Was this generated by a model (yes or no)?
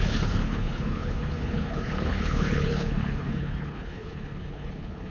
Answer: yes